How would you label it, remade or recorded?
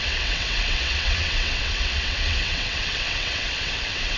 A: remade